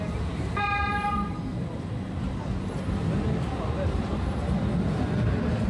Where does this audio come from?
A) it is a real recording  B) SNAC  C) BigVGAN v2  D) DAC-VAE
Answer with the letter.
A